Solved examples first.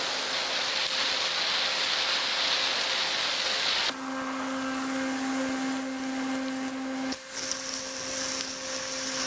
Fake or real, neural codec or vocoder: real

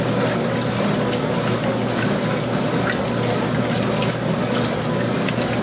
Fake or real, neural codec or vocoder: real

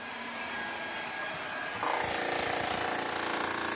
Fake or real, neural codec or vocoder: real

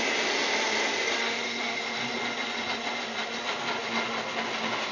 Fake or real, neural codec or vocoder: real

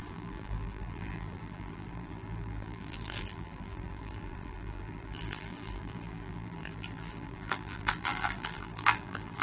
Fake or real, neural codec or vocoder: fake, vocoder, BigVGAN v2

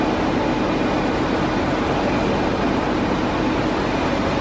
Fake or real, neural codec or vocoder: real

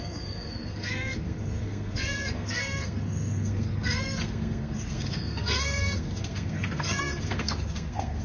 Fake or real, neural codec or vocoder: fake, codec, SNAC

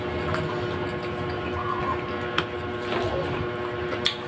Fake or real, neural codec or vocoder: real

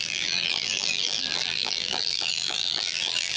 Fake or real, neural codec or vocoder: fake, vocoder, BigVGAN v2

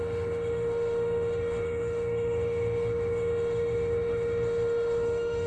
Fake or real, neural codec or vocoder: fake, autoencoder, DAC-VAE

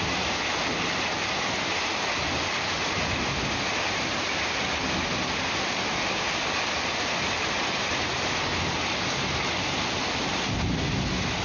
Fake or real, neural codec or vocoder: real